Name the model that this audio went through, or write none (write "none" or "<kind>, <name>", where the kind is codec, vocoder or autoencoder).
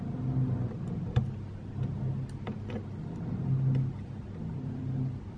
none